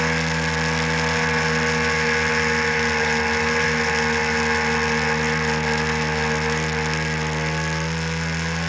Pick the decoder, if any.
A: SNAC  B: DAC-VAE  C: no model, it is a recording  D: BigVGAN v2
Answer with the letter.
C